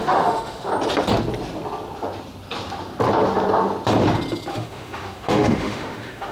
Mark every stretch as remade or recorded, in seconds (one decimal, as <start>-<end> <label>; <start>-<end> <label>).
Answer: 0.0-0.7 remade; 0.7-4.5 recorded; 4.5-6.3 remade